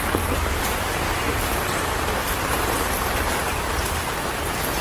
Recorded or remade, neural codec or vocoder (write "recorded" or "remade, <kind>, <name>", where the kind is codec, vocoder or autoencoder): remade, vocoder, BigVGAN v2